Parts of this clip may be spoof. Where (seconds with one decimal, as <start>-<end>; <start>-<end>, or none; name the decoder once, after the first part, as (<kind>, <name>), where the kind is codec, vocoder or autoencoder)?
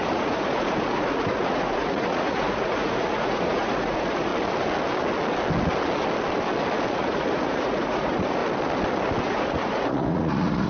0.0-4.3 (vocoder, Vocos); 6.9-8.4; 9.2-10.7